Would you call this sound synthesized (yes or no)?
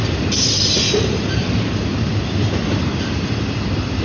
yes